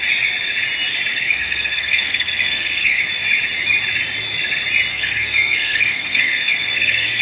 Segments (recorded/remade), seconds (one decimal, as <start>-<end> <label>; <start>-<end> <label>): 0.0-1.1 recorded; 1.1-3.0 remade; 3.0-4.9 recorded; 4.9-7.2 remade